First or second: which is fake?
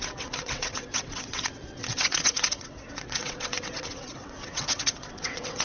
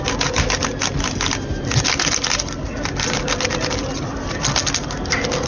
first